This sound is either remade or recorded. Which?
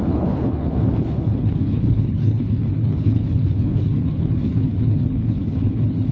remade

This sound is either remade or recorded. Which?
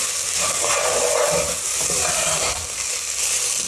recorded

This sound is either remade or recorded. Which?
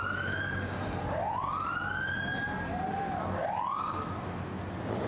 recorded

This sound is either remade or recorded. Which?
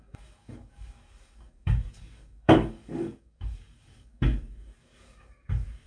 remade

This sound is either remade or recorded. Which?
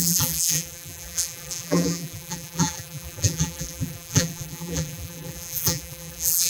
remade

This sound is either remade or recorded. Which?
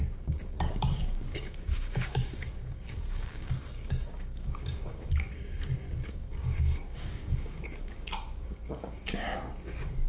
remade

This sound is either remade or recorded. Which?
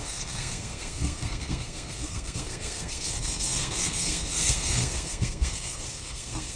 remade